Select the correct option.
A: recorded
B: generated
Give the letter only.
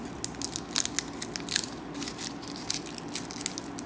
A